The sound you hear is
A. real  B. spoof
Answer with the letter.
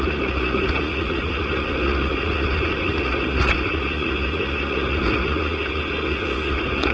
B